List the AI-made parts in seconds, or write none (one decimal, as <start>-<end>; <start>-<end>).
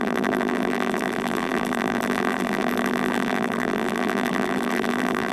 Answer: 0.0-5.3